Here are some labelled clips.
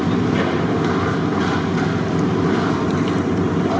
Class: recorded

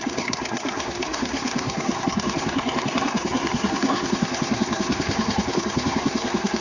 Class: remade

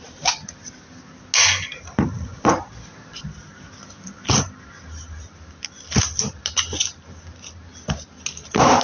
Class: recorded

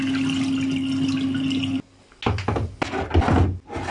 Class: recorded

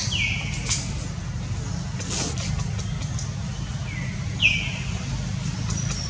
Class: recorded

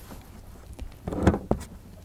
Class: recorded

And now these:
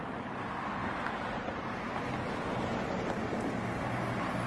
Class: recorded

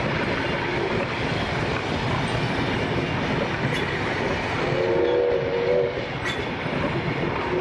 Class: recorded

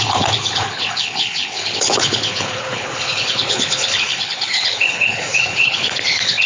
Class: remade